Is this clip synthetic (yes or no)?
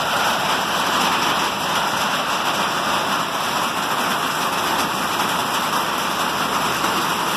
no